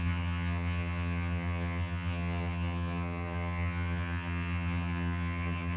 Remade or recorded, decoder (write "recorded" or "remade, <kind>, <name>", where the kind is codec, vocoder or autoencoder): remade, vocoder, HiFi-GAN